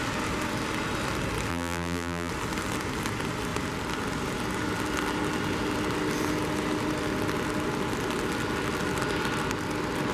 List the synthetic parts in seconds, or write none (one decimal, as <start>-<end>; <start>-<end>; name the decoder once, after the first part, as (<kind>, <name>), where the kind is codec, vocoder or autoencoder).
1.5-2.3 (vocoder, BigVGAN v2)